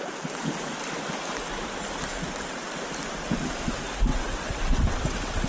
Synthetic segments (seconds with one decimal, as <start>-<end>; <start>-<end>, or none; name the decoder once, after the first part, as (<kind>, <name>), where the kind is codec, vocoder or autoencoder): 4.1-5.5 (vocoder, WaveNeXt)